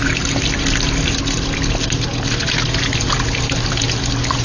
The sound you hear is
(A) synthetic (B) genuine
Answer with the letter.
B